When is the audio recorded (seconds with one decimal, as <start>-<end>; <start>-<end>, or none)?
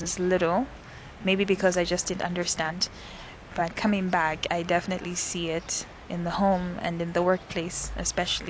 0.0-8.5